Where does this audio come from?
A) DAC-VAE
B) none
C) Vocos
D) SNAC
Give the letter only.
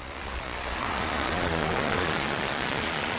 C